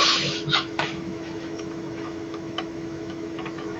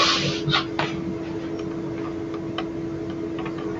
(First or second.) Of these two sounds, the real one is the second